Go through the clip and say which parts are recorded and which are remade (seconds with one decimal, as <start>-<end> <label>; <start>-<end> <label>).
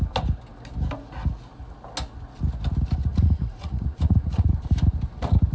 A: 0.0-3.0 recorded; 3.0-4.5 remade; 4.5-5.5 recorded